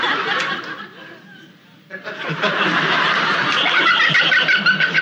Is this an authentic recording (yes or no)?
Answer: yes